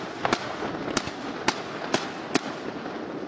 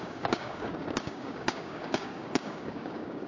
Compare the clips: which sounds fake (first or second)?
second